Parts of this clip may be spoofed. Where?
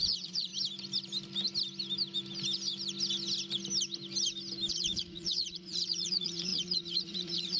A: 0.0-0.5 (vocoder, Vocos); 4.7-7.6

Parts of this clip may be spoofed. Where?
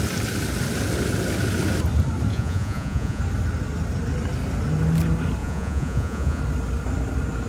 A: 2.3-3.2 (vocoder, Vocos); 5.4-6.4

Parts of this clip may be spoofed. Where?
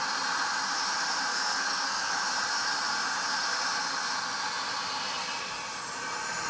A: 1.3-2.1 (codec, SNAC)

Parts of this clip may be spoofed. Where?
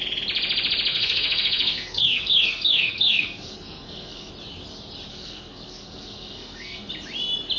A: 0.9-4.3 (codec, SNAC); 5.1-6.9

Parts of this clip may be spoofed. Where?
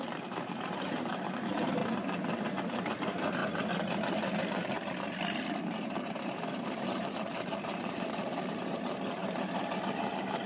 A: 0.0-1.8 (vocoder, BigVGAN v2); 2.6-3.4; 5.6-10.5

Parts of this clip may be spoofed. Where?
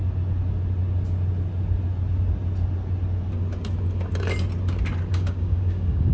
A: 5.1-6.1 (codec, DAC)